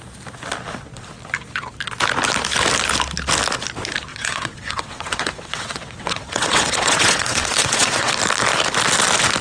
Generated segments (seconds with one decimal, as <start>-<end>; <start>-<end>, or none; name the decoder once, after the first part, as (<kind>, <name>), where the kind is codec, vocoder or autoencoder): 4.1-8.1 (vocoder, WaveNeXt)